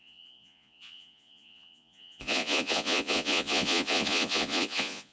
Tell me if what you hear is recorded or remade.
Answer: remade